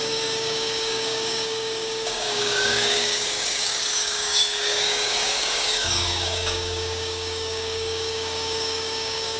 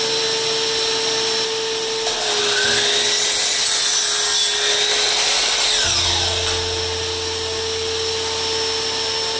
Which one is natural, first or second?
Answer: second